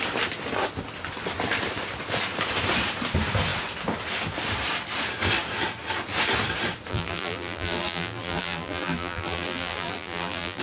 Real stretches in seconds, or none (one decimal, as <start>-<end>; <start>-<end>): 0.0-6.9